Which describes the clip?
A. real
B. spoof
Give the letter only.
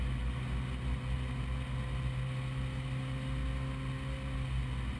A